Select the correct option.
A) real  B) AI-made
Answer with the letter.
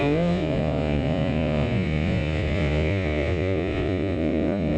B